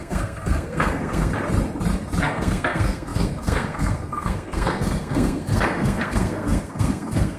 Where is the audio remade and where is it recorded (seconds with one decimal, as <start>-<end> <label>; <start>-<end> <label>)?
0.0-1.3 remade; 1.3-2.2 recorded; 2.2-7.4 remade